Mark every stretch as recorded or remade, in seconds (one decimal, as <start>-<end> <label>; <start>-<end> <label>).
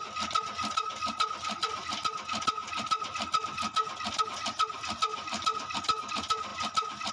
0.0-7.1 recorded